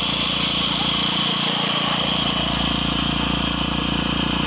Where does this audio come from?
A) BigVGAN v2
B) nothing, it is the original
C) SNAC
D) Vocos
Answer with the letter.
B